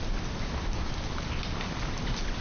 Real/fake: real